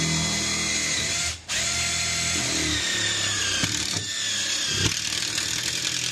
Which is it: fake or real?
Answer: real